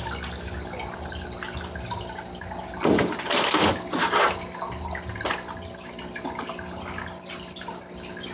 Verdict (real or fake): real